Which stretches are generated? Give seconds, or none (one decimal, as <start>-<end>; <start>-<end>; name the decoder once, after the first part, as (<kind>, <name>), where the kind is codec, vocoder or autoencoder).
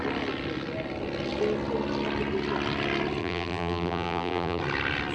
3.2-4.6 (vocoder, BigVGAN v2)